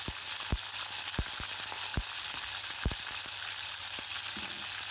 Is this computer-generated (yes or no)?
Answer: no